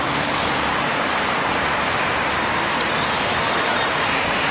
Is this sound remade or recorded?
remade